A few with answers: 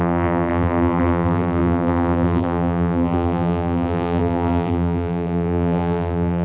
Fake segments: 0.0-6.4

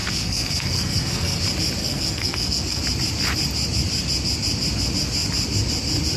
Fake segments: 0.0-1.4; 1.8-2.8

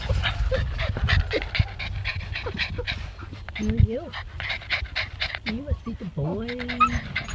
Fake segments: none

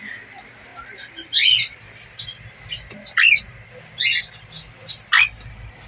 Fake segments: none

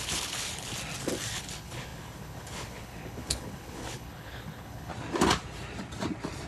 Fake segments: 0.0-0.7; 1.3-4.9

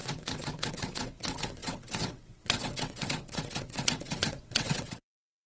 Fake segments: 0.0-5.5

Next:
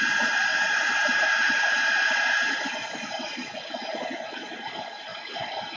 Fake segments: 0.5-4.0

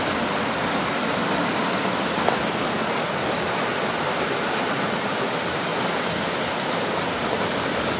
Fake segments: none